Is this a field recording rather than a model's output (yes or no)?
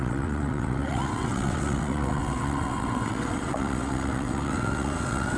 no